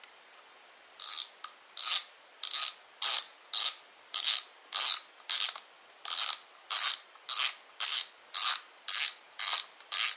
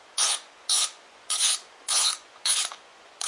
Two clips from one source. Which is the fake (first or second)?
second